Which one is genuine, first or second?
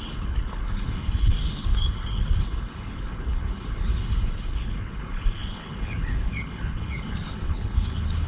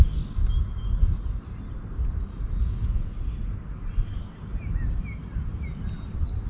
second